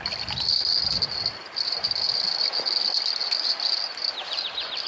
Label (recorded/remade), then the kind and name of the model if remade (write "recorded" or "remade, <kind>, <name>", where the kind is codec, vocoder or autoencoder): recorded